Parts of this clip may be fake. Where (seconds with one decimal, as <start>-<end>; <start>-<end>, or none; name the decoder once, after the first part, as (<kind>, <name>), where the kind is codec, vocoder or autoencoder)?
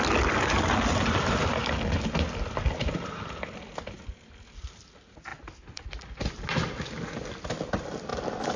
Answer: none